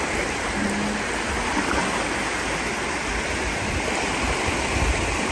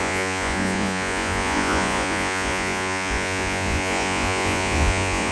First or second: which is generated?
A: second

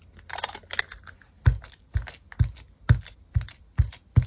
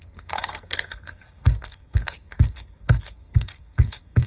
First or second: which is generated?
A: second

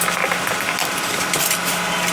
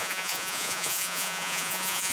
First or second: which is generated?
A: second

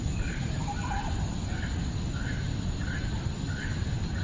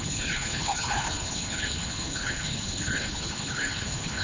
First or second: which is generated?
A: second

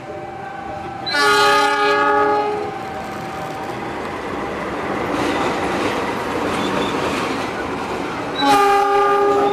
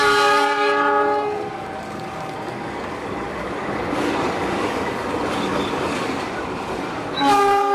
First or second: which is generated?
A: second